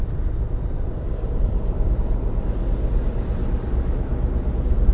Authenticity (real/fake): fake